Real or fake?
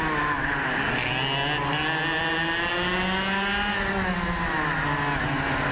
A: real